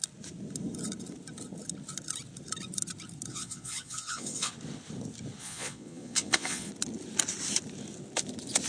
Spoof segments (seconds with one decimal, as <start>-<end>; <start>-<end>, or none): 3.3-4.5; 5.4-6.7